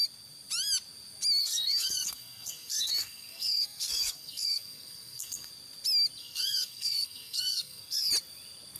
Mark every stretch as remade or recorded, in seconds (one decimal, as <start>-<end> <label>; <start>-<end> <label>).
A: 0.0-1.4 recorded; 1.4-5.5 remade; 5.5-6.2 recorded; 6.2-8.1 remade; 8.1-8.8 recorded